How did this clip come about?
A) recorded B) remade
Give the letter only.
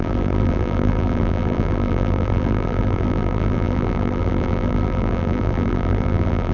B